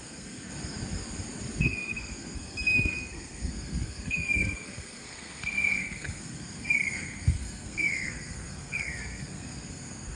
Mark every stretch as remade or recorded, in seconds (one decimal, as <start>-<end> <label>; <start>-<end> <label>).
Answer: 0.0-0.5 remade; 0.5-1.6 recorded; 1.6-10.2 remade

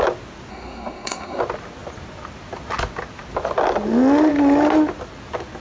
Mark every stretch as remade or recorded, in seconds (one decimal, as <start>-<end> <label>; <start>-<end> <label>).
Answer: 0.0-0.5 recorded; 0.5-1.4 remade; 1.4-5.6 recorded

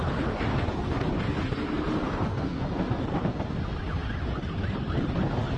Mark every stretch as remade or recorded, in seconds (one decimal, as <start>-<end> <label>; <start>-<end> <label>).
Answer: 0.0-2.3 recorded; 2.3-3.6 remade; 3.6-5.6 recorded